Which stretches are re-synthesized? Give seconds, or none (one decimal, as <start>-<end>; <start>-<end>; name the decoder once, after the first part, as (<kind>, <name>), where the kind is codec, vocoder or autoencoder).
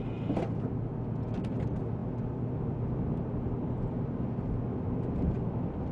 none